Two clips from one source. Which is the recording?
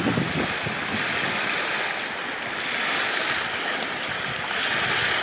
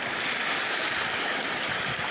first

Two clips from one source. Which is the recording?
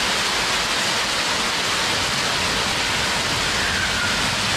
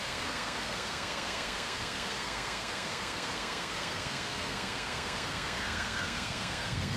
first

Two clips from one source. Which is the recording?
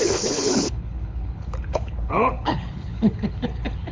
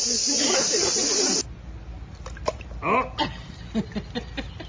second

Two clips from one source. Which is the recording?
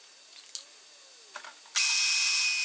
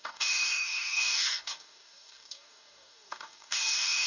first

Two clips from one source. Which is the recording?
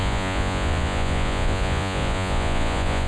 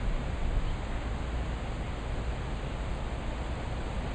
second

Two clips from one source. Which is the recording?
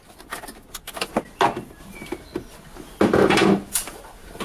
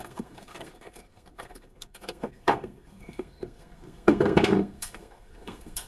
first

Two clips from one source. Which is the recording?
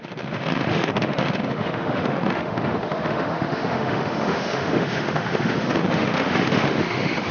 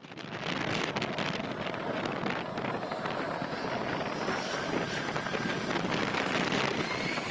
second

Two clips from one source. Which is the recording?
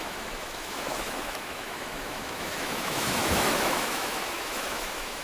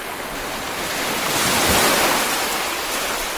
second